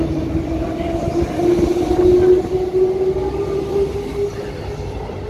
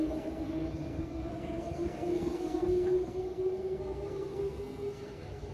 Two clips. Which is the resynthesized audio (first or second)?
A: second